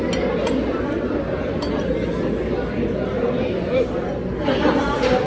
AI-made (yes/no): no